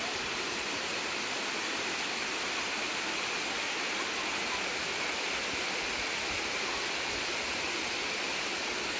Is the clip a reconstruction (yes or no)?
no